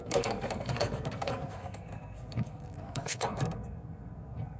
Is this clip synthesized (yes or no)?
yes